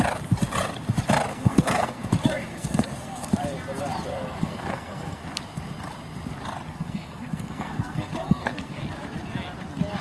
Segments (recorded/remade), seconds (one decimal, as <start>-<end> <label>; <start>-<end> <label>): 0.0-1.3 recorded; 1.3-2.1 remade; 2.1-2.5 recorded; 2.5-3.3 remade; 3.3-4.1 recorded; 4.1-5.4 remade; 5.4-6.7 recorded; 6.7-8.8 remade; 8.8-10.0 recorded